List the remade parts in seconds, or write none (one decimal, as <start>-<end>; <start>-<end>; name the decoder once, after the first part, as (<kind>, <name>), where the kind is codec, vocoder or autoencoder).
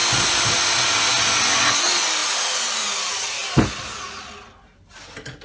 none